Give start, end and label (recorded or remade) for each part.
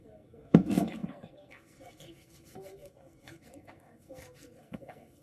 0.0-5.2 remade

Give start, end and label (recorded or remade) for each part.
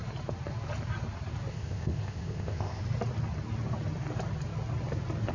0.0-1.5 recorded; 1.5-2.8 remade; 2.8-5.3 recorded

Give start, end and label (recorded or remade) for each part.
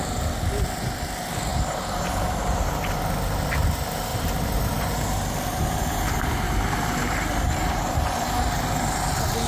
0.0-1.5 recorded; 1.5-3.0 remade; 3.0-4.1 recorded; 4.1-9.1 remade; 9.1-9.5 recorded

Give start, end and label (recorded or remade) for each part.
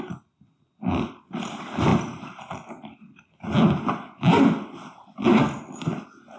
0.0-6.4 recorded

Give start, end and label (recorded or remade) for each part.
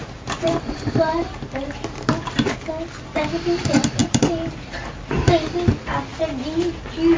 0.0-2.1 remade; 2.1-4.0 recorded; 4.0-4.9 remade; 4.9-7.2 recorded